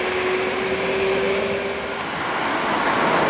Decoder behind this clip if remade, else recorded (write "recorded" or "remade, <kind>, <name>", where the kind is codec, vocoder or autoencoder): recorded